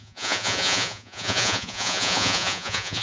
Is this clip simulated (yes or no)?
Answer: yes